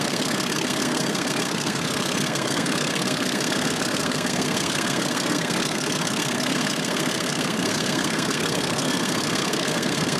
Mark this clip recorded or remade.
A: remade